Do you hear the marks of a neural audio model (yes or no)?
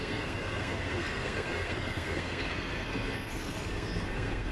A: yes